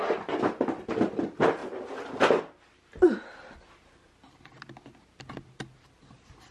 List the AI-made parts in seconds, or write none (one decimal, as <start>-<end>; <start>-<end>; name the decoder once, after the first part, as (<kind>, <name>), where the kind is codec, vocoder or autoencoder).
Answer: none